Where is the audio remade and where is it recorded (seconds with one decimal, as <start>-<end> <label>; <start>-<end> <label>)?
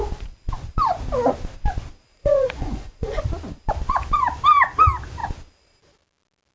0.0-2.1 recorded; 2.1-3.2 remade; 3.2-6.5 recorded